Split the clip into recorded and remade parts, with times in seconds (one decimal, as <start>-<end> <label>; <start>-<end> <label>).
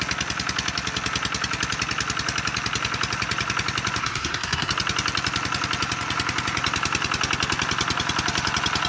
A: 0.0-4.0 recorded; 4.0-4.7 remade; 4.7-8.9 recorded